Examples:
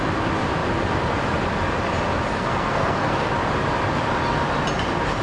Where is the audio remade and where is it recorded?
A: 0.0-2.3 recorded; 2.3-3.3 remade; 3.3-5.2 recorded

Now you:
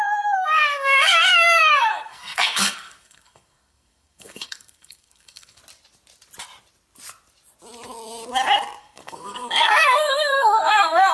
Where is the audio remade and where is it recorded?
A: 0.0-5.6 remade; 5.6-8.8 recorded; 8.8-11.1 remade

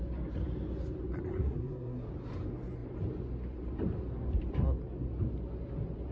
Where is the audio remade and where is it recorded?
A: 0.0-1.3 recorded; 1.3-2.1 remade; 2.1-6.1 recorded